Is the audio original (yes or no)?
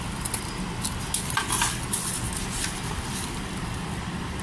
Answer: yes